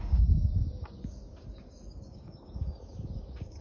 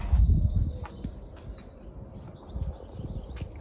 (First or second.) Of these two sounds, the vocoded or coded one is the first